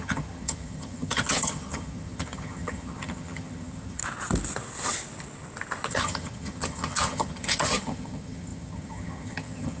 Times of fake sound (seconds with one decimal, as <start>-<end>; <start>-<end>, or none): 0.0-4.0; 5.9-9.8